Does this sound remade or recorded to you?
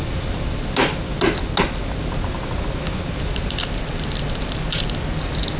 recorded